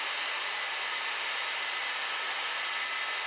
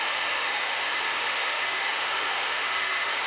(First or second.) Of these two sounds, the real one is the first